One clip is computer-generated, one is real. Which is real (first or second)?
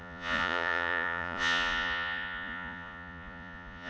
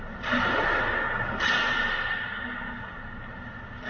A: second